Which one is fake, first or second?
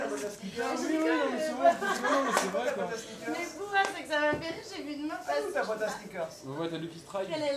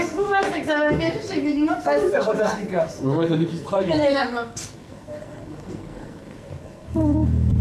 second